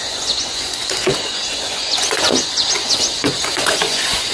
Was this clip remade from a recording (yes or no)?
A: yes